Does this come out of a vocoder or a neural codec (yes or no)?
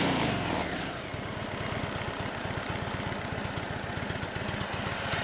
no